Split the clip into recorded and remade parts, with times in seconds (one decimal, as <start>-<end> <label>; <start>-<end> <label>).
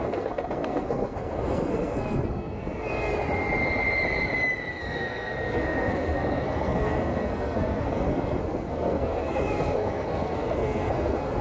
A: 0.0-3.1 remade; 3.1-4.8 recorded; 4.8-11.4 remade